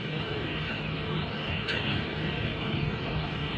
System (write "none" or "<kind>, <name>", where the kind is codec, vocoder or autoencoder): codec, DAC